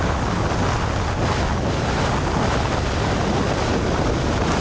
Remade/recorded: recorded